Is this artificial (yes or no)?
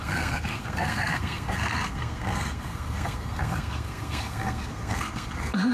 yes